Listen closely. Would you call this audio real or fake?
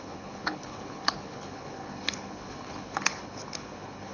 fake